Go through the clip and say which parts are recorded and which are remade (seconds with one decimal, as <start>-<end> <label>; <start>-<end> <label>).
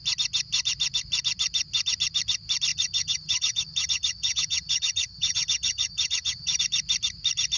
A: 0.0-2.7 recorded; 2.7-6.6 remade; 6.6-7.6 recorded